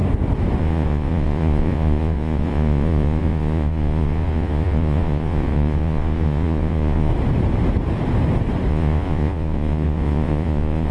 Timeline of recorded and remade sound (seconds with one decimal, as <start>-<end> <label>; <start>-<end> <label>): 0.0-0.6 recorded; 0.6-7.1 remade; 7.1-8.7 recorded; 8.7-10.9 remade